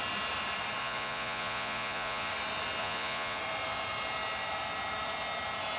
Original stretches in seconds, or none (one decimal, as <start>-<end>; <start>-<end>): 0.0-0.8; 2.3-2.8; 3.4-5.8